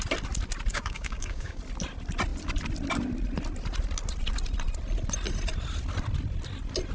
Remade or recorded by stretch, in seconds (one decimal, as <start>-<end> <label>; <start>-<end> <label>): 0.0-0.7 recorded; 0.7-1.6 remade; 1.6-6.9 recorded